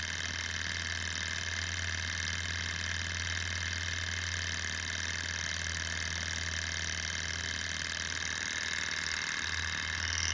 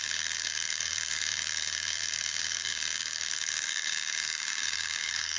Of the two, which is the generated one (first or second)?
second